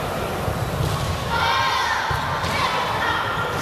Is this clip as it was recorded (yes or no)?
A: yes